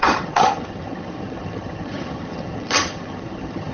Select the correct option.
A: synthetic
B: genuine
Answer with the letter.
A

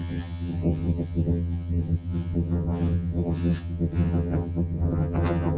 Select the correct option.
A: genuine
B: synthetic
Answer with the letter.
B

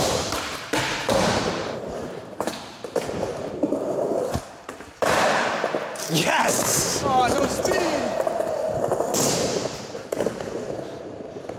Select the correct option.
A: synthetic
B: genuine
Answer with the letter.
A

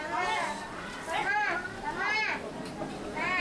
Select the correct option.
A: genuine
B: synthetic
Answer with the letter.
A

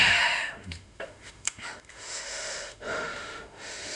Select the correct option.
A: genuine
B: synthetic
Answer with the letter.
B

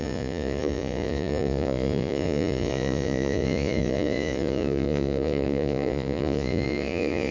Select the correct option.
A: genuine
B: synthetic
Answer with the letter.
B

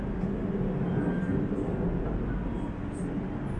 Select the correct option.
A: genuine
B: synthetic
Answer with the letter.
A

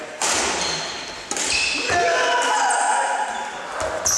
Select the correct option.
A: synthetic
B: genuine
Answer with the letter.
B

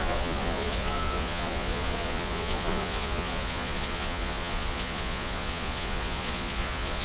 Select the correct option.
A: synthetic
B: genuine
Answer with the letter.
A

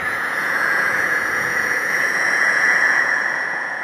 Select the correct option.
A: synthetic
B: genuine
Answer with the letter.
A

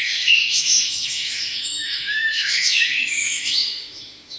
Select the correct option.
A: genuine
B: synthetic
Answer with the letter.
B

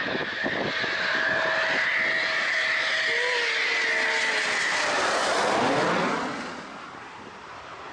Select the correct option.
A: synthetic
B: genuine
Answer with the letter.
B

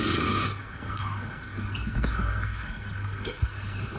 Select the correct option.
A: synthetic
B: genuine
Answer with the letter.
A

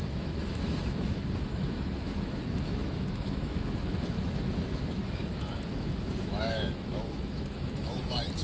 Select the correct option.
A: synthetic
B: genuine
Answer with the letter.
A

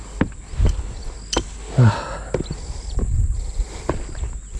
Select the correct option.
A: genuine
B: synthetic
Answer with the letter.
A